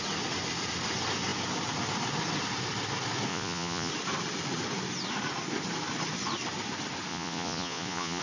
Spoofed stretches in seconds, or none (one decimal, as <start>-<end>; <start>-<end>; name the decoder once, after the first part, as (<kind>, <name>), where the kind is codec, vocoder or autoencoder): 3.3-3.9 (vocoder, Vocos); 7.1-8.2